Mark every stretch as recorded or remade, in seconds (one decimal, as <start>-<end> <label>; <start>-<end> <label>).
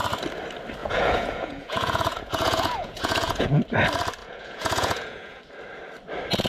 0.0-0.8 recorded; 0.8-3.5 remade; 3.5-4.2 recorded; 4.2-5.4 remade; 5.4-6.5 recorded